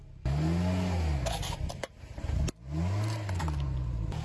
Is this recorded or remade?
recorded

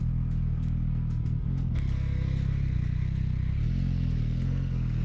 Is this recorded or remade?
remade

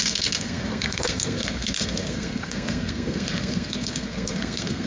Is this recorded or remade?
remade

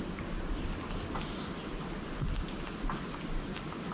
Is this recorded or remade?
recorded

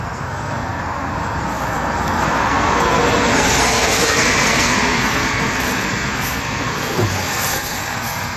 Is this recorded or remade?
remade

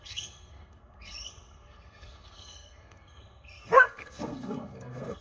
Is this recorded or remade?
remade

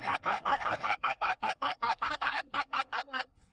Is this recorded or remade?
remade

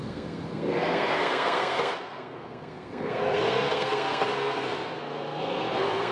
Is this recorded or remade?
remade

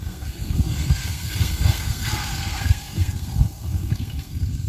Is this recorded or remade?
remade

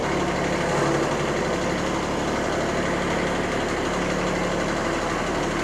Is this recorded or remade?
recorded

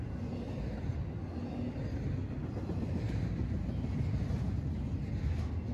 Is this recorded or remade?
recorded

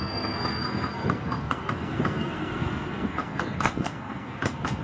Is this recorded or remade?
remade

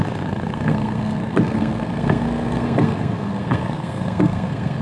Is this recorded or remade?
remade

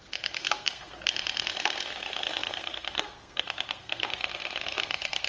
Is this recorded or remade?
remade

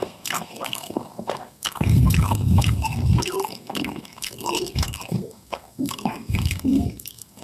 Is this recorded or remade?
remade